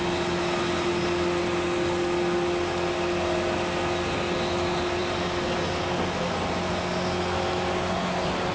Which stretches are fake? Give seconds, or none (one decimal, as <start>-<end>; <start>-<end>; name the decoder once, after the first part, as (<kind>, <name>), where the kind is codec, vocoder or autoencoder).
none